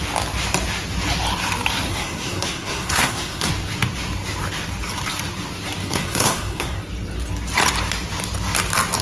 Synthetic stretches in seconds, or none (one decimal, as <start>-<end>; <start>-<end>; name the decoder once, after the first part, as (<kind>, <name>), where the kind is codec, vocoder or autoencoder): 1.9-3.5 (codec, SNAC); 5.8-6.8